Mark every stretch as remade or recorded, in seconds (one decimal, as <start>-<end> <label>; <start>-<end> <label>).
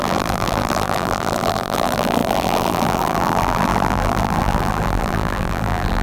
0.0-6.0 remade